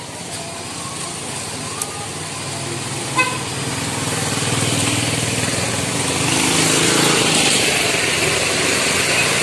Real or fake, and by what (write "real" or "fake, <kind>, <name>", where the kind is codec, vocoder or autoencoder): real